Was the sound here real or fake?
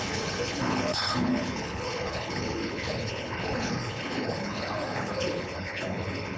fake